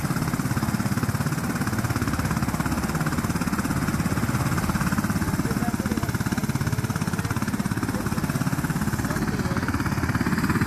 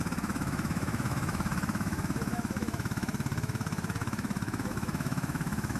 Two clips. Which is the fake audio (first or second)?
second